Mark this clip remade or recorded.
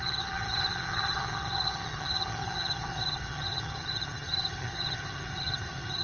remade